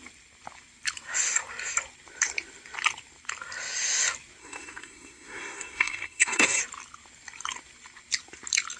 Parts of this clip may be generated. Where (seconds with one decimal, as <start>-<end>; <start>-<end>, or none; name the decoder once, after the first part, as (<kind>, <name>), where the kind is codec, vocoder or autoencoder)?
4.4-6.6 (codec, SNAC)